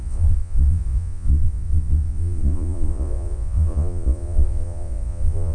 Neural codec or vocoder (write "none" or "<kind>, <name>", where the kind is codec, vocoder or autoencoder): vocoder, Vocos